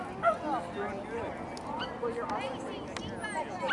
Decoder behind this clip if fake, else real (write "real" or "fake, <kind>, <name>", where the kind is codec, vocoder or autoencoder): real